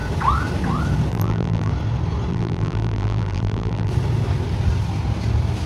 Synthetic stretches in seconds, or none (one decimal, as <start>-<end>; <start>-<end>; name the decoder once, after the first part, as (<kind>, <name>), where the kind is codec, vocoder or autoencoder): 1.1-1.7 (vocoder, BigVGAN v2); 2.3-3.9